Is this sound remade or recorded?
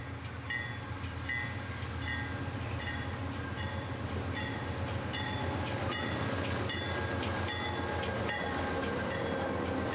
recorded